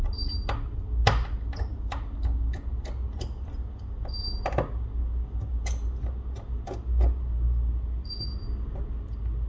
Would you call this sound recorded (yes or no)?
yes